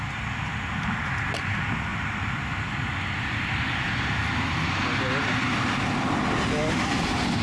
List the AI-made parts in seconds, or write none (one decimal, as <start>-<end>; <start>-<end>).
none